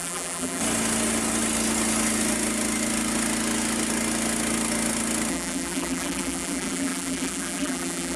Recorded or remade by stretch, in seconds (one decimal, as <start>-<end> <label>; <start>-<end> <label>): 0.0-0.6 remade; 0.6-5.3 recorded; 5.3-8.2 remade